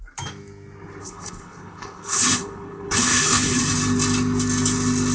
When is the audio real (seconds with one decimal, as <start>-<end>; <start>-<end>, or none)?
0.0-1.0; 3.6-5.1